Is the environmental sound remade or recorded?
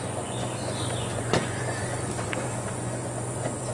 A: remade